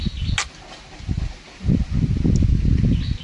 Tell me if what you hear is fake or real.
real